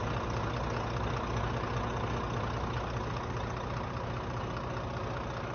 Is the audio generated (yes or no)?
no